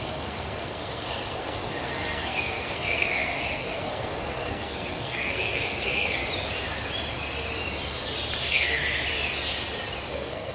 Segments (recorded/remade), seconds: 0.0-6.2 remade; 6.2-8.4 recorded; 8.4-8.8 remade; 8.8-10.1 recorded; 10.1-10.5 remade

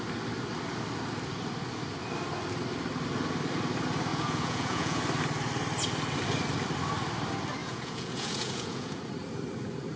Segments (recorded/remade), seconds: 0.0-4.1 recorded; 4.1-5.0 remade; 5.0-7.6 recorded; 7.6-9.0 remade; 9.0-10.0 recorded

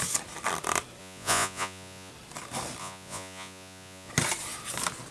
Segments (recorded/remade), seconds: 0.0-1.0 recorded; 1.0-2.1 remade; 2.1-2.8 recorded; 2.8-4.1 remade; 4.1-5.1 recorded

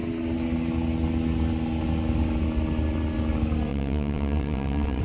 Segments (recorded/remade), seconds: 0.0-3.7 recorded; 3.7-5.0 remade

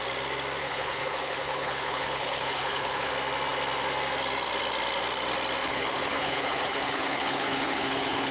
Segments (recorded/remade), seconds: 0.0-0.6 recorded; 0.6-3.1 remade; 3.1-5.6 recorded; 5.6-8.3 remade

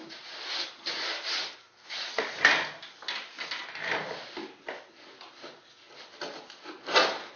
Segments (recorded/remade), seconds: 0.0-2.0 remade; 2.0-7.4 recorded